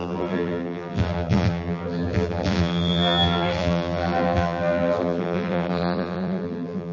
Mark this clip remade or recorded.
remade